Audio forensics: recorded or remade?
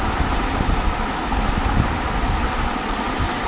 recorded